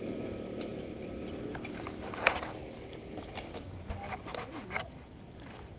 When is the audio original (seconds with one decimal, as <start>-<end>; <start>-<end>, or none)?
0.0-5.8